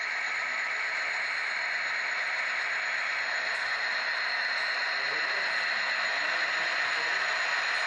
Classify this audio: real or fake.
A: real